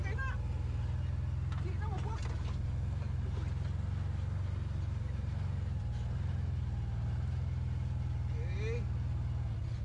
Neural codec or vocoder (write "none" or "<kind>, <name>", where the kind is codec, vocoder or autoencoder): none